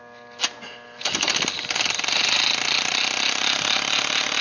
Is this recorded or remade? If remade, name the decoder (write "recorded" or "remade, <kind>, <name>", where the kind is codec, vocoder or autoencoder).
recorded